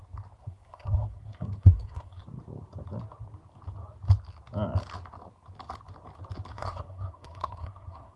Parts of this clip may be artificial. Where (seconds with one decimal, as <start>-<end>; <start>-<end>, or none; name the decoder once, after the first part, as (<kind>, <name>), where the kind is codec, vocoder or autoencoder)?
0.4-2.2 (codec, SNAC); 6.5-8.2

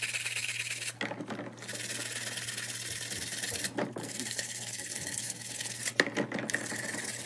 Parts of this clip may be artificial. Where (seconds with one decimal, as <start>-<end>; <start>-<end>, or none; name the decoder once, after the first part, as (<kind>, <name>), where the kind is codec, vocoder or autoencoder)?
4.0-5.8 (codec, SNAC)

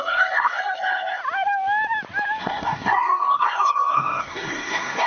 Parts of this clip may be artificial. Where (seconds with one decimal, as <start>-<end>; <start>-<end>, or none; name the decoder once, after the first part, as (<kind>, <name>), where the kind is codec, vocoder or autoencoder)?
0.0-1.2 (codec, SNAC); 2.4-5.1

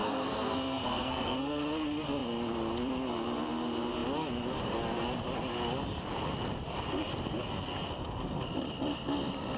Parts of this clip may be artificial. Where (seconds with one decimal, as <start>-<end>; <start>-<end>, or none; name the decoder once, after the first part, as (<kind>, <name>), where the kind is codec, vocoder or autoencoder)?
0.0-1.6 (codec, SNAC)